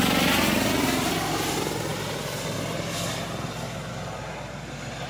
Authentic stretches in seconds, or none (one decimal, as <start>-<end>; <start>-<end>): 0.0-5.1